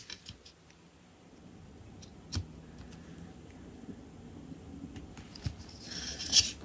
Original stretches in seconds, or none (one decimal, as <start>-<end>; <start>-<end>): 0.0-6.6